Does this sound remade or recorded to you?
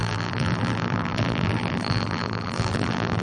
remade